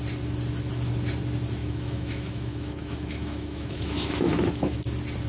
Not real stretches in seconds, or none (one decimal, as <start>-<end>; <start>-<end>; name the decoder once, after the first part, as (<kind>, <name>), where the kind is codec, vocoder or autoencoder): 1.6-4.8 (autoencoder, DAC-VAE)